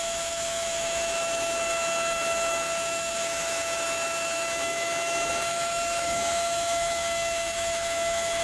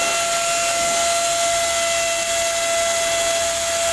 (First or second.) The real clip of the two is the second